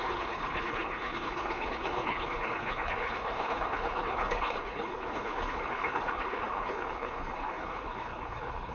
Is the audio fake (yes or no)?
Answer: yes